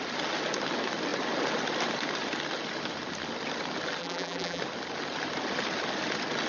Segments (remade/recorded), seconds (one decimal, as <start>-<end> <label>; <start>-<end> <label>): 0.0-4.0 recorded; 4.0-4.6 remade; 4.6-6.5 recorded